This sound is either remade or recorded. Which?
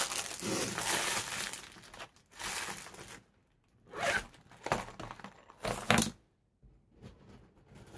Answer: recorded